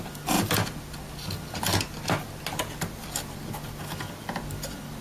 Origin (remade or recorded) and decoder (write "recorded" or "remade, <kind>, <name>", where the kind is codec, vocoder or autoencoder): recorded